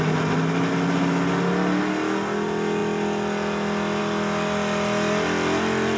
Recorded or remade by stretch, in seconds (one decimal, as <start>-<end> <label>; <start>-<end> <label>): 0.0-6.0 recorded